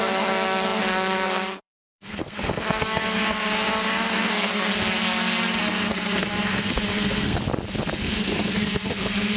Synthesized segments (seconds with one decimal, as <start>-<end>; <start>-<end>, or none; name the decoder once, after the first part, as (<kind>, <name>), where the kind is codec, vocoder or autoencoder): 0.0-4.7 (codec, SNAC); 5.6-7.4; 7.9-9.4